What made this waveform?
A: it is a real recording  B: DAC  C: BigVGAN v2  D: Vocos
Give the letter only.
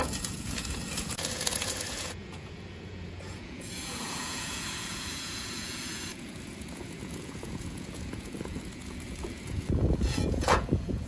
D